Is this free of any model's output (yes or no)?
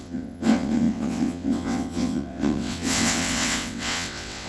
no